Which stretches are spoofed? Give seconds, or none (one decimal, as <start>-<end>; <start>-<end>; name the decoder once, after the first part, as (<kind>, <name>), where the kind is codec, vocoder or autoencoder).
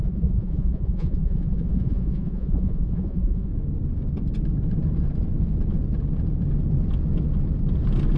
0.0-3.5 (vocoder, Vocos)